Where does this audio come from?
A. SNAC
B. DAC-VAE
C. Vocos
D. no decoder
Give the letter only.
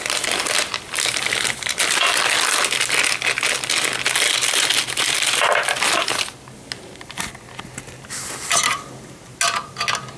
D